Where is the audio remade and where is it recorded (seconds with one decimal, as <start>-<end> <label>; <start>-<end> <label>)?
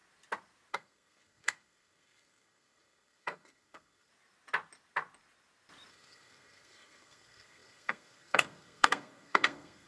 0.0-0.7 recorded; 0.7-4.1 remade; 4.1-5.9 recorded; 5.9-9.9 remade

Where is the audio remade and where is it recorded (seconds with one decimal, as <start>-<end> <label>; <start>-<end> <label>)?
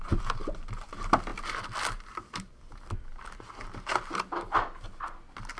0.0-5.6 recorded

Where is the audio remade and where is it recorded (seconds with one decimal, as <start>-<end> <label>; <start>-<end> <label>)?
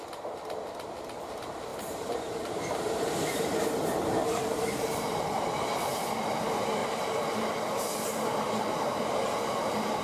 0.0-1.7 recorded; 1.7-5.2 remade; 5.2-10.0 recorded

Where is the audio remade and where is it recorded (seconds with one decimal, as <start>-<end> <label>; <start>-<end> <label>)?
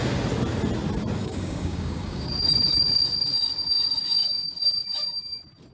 0.0-1.2 recorded; 1.2-2.3 remade; 2.3-5.7 recorded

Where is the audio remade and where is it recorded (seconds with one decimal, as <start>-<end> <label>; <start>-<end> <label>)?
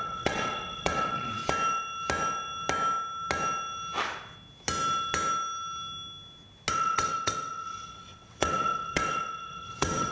0.0-1.4 remade; 1.4-6.7 recorded; 6.7-10.1 remade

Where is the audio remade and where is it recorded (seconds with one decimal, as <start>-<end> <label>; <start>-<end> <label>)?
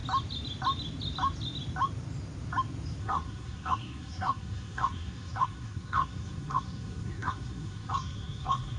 0.0-3.0 recorded; 3.0-8.8 remade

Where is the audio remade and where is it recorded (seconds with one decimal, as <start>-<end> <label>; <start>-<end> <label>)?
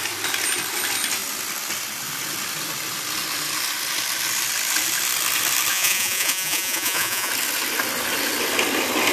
0.0-5.7 recorded; 5.7-7.3 remade; 7.3-9.1 recorded